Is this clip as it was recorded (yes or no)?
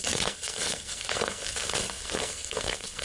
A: no